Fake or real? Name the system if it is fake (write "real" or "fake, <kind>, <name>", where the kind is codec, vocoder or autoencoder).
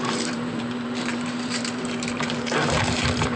fake, vocoder, BigVGAN v2